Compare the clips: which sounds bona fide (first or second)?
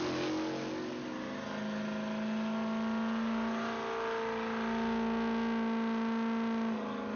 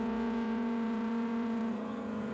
first